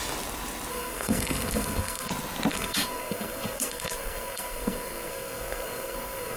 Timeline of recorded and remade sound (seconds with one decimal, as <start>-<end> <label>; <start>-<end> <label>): 0.0-0.7 recorded; 0.7-2.1 remade; 2.1-2.5 recorded; 2.5-6.4 remade